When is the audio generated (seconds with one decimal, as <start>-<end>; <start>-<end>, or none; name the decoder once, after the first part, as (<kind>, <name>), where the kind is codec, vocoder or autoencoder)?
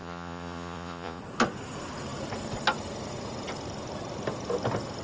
0.0-1.2 (vocoder, Vocos)